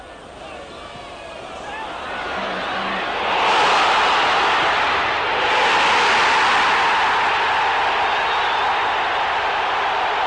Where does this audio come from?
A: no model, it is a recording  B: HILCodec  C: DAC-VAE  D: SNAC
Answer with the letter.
A